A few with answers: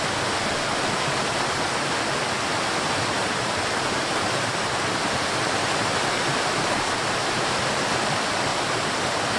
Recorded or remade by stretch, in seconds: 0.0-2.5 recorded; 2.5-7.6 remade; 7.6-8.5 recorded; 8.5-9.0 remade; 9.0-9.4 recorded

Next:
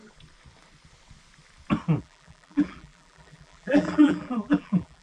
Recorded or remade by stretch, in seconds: 0.0-2.0 recorded; 2.0-5.0 remade

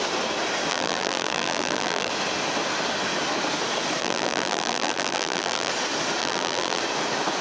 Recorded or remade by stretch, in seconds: 0.0-0.7 recorded; 0.7-2.1 remade; 2.1-4.0 recorded; 4.0-5.7 remade; 5.7-6.2 recorded; 6.2-6.8 remade; 6.8-7.4 recorded